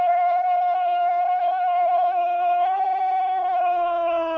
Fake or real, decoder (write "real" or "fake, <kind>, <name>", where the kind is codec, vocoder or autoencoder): fake, codec, SNAC